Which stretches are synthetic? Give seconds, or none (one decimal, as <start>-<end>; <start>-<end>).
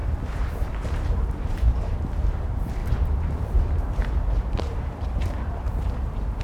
0.0-2.0; 2.8-6.4